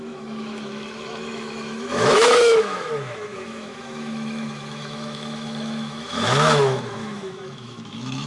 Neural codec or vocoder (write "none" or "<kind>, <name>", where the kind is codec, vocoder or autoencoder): autoencoder, DAC-VAE